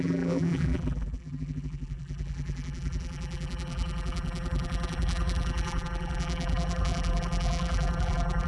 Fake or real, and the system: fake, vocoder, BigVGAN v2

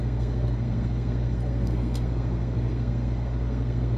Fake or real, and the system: fake, codec, SNAC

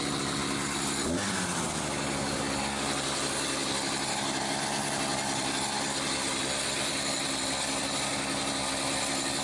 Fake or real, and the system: real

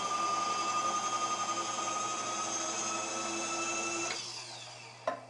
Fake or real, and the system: real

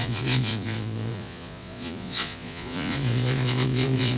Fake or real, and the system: fake, vocoder, Vocos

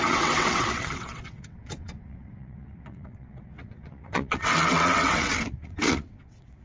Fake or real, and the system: fake, vocoder, WaveNeXt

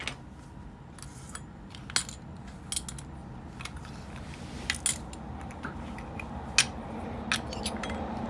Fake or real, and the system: real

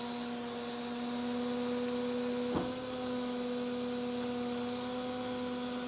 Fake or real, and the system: real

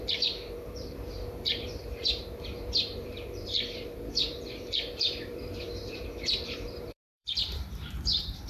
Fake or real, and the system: fake, vocoder, BigVGAN v2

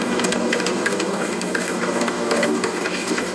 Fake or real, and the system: fake, codec, DAC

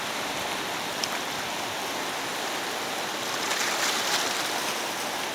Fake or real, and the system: real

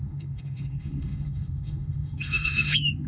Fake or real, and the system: fake, autoencoder, DAC-VAE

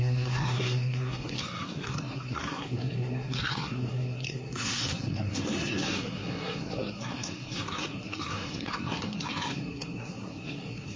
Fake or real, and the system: fake, codec, SNAC